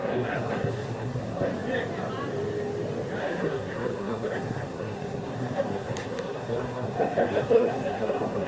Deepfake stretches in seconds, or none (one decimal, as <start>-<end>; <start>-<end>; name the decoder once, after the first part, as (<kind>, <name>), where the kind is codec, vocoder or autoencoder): 0.0-1.5 (codec, SNAC); 3.2-8.5